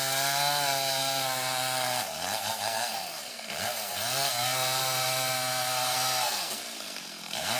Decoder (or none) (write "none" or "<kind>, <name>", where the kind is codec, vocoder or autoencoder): codec, SNAC